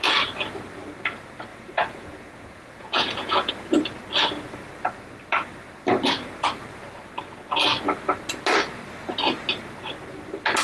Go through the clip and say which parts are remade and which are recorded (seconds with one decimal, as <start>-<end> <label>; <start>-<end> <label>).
0.0-1.5 recorded; 1.5-3.5 remade; 3.5-10.6 recorded